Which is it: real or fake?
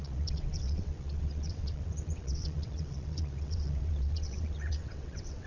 fake